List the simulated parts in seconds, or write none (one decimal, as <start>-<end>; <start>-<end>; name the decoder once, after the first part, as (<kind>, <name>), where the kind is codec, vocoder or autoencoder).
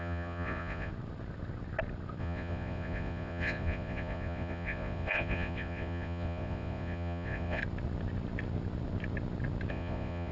0.0-0.9 (vocoder, Vocos); 2.2-7.6; 9.7-10.3